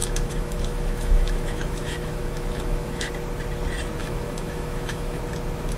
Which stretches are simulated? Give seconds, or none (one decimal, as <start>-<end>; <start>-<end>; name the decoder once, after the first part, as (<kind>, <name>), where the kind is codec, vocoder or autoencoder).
0.0-3.1 (autoencoder, DAC-VAE); 4.0-5.2